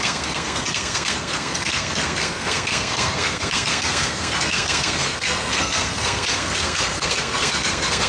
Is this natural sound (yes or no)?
no